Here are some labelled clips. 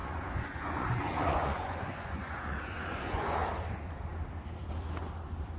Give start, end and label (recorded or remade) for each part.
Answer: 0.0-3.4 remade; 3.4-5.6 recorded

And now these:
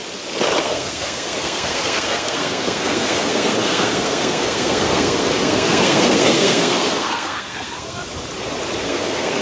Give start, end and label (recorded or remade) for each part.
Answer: 0.0-0.6 recorded; 0.6-8.0 remade; 8.0-8.8 recorded; 8.8-9.4 remade

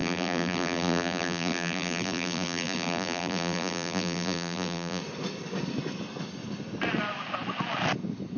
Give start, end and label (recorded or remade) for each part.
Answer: 0.0-5.0 remade; 5.0-8.4 recorded

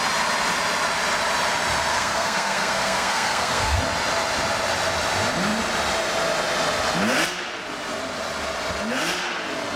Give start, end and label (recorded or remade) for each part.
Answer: 0.0-1.9 recorded; 1.9-3.8 remade; 3.8-9.8 recorded